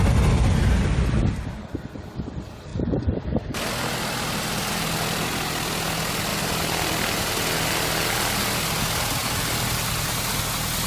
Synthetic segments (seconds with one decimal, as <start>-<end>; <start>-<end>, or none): 2.7-3.7